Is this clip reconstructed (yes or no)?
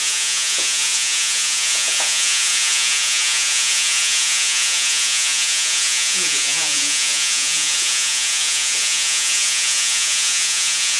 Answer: yes